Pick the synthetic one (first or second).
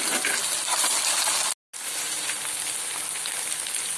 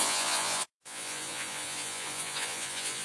second